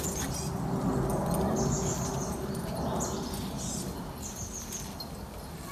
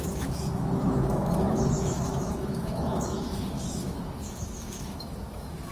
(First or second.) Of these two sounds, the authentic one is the first